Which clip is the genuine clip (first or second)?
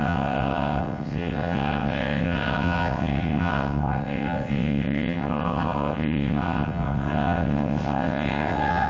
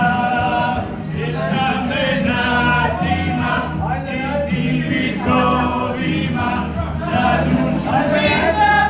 second